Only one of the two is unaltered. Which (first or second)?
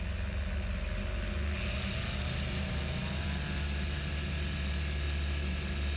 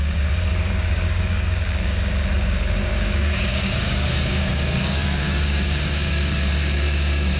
first